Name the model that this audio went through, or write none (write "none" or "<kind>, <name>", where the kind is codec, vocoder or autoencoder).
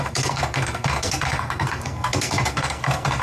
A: codec, SNAC